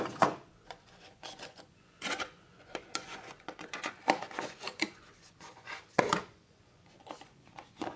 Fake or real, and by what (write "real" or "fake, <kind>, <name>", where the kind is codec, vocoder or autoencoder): fake, vocoder, Vocos